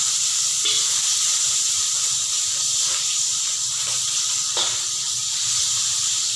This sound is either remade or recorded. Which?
remade